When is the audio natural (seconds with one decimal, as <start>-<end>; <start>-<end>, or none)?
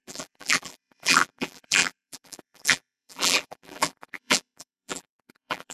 none